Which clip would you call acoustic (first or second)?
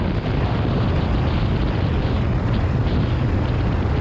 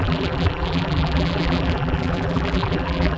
first